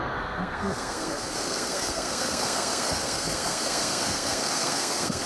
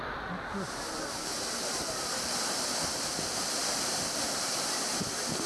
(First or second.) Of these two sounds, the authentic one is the second